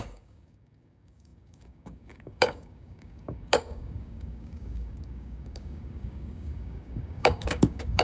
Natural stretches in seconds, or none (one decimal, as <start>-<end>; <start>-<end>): none

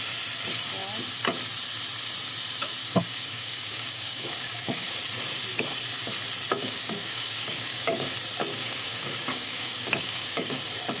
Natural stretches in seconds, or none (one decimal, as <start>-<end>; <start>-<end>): 0.0-2.8; 5.0-6.5; 8.1-8.5; 10.6-11.0